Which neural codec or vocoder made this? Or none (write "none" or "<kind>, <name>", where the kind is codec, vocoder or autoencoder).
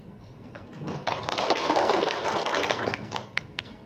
codec, SNAC